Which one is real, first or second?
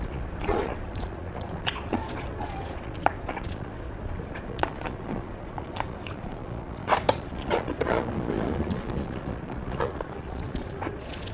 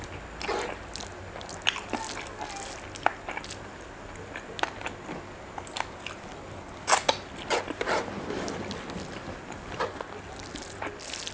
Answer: second